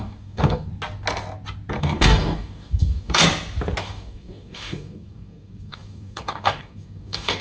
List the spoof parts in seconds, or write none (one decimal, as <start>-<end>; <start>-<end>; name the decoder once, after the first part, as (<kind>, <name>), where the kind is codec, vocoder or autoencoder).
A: 0.0-0.7 (codec, DAC); 1.8-3.2; 3.8-7.4